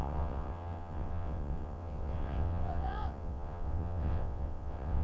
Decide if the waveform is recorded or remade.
remade